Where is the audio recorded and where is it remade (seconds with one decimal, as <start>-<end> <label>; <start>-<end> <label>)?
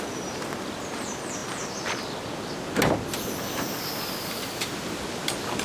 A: 0.0-5.6 recorded